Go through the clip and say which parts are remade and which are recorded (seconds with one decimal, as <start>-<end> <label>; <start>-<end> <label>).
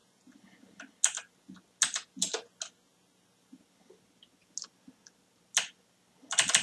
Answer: 0.0-6.6 recorded